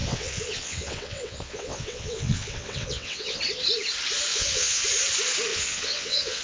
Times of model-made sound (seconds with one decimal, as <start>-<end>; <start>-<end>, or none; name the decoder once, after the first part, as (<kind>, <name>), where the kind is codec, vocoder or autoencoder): 0.0-3.4 (vocoder, WaveNeXt); 4.3-4.8; 5.5-6.4